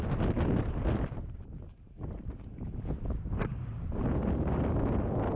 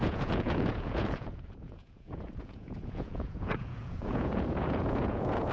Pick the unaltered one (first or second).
first